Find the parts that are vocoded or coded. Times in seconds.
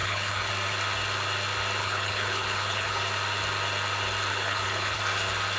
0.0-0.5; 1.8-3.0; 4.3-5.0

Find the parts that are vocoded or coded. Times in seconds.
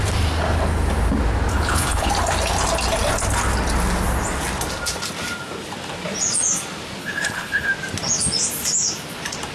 1.5-2.1; 7.0-7.7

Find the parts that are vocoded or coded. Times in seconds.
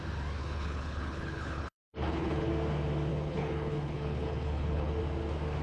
0.4-2.5; 3.1-5.0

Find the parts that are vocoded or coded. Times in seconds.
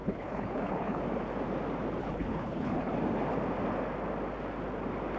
0.0-1.0; 2.0-2.9